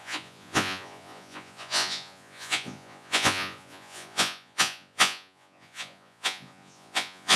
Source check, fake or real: fake